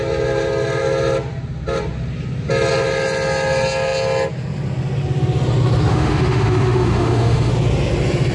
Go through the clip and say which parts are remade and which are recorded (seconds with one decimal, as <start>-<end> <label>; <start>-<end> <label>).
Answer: 0.0-5.9 recorded; 5.9-7.5 remade; 7.5-8.3 recorded